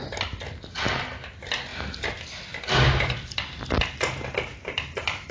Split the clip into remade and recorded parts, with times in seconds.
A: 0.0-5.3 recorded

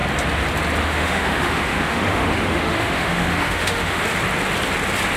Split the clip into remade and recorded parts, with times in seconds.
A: 0.0-0.9 recorded; 0.9-4.0 remade; 4.0-5.2 recorded

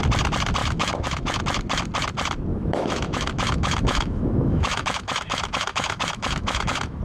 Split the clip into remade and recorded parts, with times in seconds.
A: 0.0-0.6 recorded; 0.6-1.4 remade; 1.4-2.5 recorded; 2.5-7.0 remade

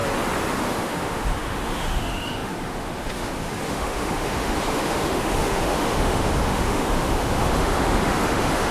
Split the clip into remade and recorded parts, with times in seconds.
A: 0.0-0.6 recorded; 0.6-8.7 remade

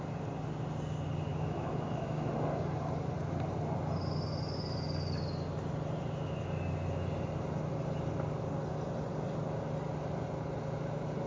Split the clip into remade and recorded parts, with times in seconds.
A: 0.0-1.3 recorded; 1.3-2.3 remade; 2.3-11.3 recorded